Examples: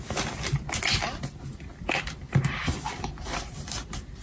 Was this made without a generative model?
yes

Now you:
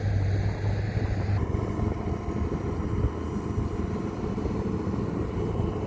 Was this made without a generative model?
yes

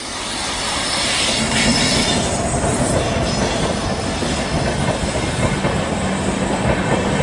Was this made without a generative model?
yes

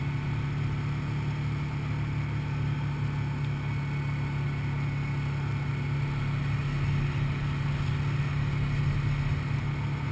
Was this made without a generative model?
yes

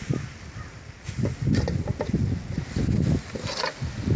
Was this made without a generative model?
yes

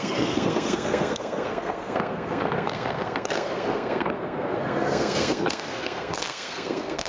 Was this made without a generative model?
no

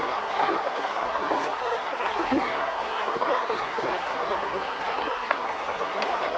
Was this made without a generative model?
no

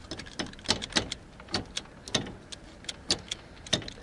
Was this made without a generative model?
yes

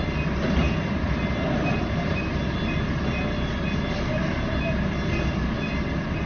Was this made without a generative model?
yes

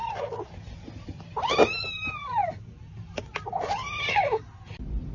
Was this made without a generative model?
yes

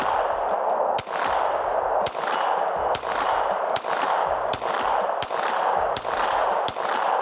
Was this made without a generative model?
yes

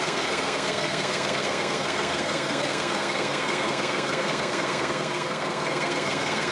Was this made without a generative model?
no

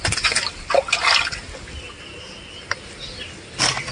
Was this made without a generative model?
yes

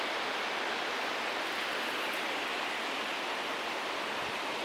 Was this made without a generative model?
yes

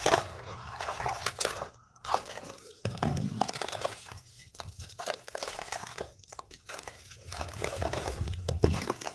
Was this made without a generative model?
no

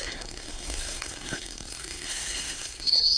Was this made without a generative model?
no